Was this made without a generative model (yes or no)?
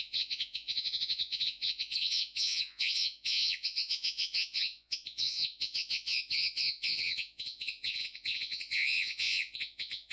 no